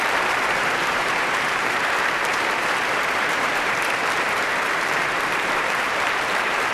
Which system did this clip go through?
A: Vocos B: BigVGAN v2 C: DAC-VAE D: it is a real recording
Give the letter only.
B